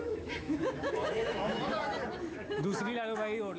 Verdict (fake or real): fake